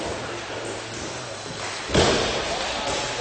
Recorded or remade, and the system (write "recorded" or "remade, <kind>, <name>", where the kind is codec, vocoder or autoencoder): recorded